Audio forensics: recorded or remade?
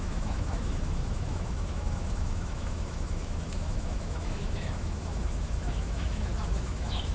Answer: remade